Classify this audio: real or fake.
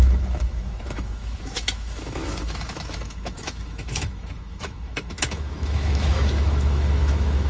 fake